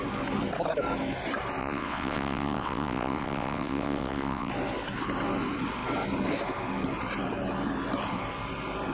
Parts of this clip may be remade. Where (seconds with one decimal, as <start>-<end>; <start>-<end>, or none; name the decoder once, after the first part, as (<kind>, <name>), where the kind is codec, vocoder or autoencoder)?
1.6-4.5 (vocoder, WaveNeXt)